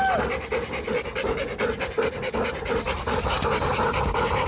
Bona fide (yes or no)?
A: yes